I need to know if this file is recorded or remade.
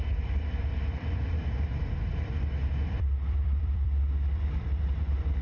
remade